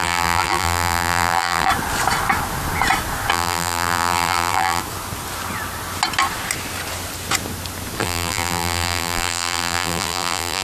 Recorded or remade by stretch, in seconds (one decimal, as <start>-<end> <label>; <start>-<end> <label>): 0.0-1.7 remade; 1.7-3.3 recorded; 3.3-4.8 remade; 4.8-8.0 recorded; 8.0-10.6 remade